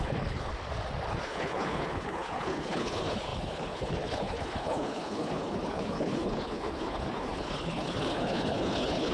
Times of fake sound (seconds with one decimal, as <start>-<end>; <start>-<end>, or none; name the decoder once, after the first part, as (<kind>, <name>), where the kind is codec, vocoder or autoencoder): 0.0-0.5 (codec, HILCodec); 1.1-9.1